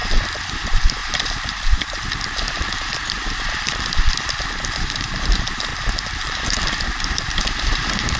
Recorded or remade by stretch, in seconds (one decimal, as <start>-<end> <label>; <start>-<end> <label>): 0.0-0.5 recorded; 0.5-5.7 remade; 5.7-6.2 recorded; 6.2-8.2 remade